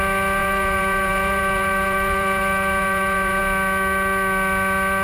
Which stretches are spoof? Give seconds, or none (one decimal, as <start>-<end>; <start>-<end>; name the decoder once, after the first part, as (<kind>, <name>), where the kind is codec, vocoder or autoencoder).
0.4-3.4 (vocoder, BigVGAN v2)